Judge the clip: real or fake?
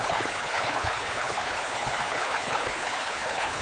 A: fake